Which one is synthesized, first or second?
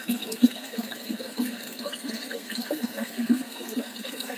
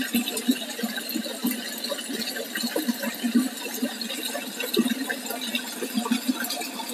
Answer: first